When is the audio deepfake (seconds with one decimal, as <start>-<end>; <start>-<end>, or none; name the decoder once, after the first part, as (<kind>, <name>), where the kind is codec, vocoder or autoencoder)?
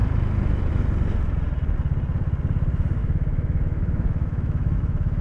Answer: 3.0-5.2 (autoencoder, DAC-VAE)